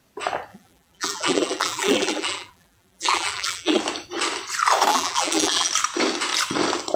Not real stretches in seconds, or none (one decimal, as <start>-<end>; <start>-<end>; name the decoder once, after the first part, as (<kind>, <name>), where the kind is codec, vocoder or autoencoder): 0.5-3.8 (vocoder, BigVGAN v2); 4.9-5.7

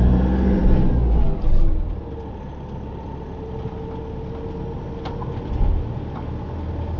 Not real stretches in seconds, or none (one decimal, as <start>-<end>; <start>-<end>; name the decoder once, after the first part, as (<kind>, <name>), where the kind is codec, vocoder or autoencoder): none

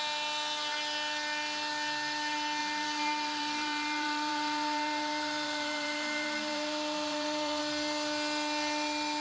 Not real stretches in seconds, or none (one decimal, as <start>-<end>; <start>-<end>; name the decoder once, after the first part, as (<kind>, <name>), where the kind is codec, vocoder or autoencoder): 2.6-7.6 (vocoder, BigVGAN v2)

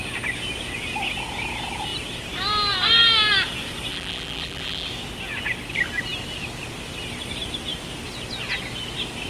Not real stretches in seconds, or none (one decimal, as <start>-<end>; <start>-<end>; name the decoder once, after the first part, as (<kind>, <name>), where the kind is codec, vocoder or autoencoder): 3.9-4.9 (vocoder, BigVGAN v2)

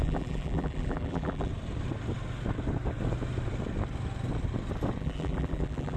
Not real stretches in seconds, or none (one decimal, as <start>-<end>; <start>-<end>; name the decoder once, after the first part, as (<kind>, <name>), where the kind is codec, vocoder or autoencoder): 0.0-1.5 (vocoder, BigVGAN v2); 5.0-6.0

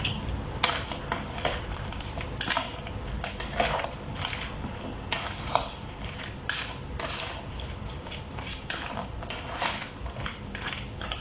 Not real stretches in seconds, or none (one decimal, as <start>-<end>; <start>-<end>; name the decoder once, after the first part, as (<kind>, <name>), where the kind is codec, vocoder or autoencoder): 0.0-2.7 (vocoder, BigVGAN v2); 5.1-11.2

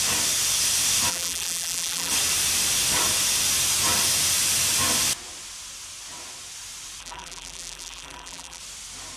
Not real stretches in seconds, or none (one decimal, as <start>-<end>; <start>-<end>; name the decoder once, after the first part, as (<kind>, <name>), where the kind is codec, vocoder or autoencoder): 1.1-2.1 (vocoder, BigVGAN v2); 7.0-8.6

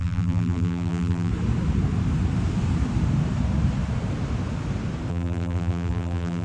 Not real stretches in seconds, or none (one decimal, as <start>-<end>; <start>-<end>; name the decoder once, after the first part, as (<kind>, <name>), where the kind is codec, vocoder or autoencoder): 0.0-1.3 (vocoder, BigVGAN v2); 5.1-6.4